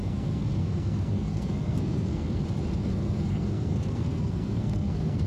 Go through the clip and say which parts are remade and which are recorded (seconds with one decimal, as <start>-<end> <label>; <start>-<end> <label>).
0.0-2.4 remade; 2.4-2.8 recorded; 2.8-5.3 remade